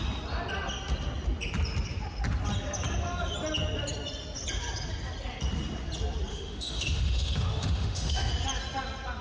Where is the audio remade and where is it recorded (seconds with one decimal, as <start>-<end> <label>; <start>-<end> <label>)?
0.0-6.3 recorded; 6.3-8.3 remade; 8.3-9.2 recorded